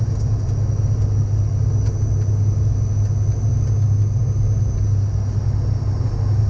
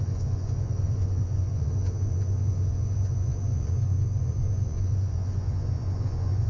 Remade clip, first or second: second